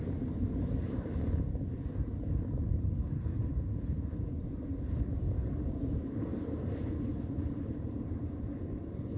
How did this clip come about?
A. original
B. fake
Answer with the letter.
B